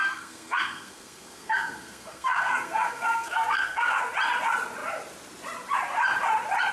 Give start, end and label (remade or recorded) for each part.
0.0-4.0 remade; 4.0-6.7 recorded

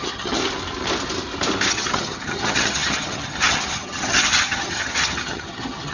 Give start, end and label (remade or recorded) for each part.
0.0-0.4 remade; 0.4-1.7 recorded; 1.7-5.9 remade

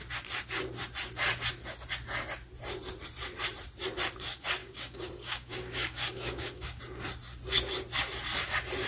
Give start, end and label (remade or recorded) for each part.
0.0-4.6 recorded; 4.6-6.8 remade; 6.8-8.9 recorded